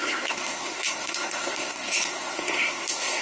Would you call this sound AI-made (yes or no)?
yes